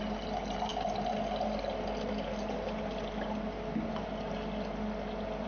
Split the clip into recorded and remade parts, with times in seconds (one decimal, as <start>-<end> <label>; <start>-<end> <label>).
0.0-5.5 recorded